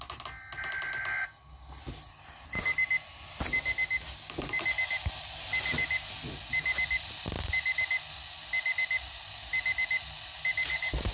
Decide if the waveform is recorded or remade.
recorded